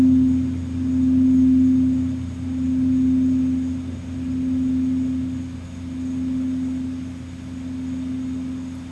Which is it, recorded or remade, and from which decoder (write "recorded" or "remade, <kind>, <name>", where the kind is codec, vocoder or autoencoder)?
recorded